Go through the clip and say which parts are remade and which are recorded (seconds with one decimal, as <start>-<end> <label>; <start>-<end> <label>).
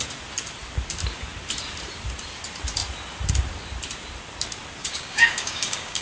0.0-4.8 recorded; 4.8-6.0 remade